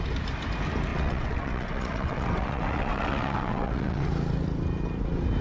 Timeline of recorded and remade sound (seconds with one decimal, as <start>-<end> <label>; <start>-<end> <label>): 0.0-0.9 recorded; 0.9-4.1 remade; 4.1-5.4 recorded